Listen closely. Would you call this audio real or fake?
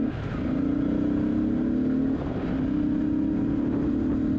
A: real